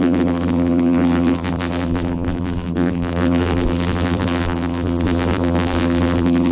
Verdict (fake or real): fake